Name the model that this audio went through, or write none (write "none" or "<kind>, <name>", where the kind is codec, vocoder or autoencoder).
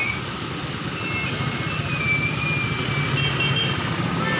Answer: none